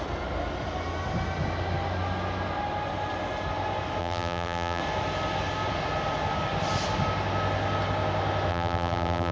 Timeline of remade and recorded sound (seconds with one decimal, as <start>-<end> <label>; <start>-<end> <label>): 0.0-4.0 recorded; 4.0-4.8 remade; 4.8-8.5 recorded; 8.5-9.3 remade